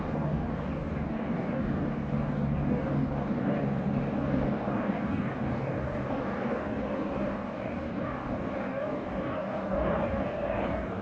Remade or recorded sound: remade